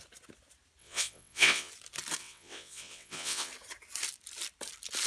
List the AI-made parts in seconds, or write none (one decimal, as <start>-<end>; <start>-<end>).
0.8-1.7; 2.2-3.5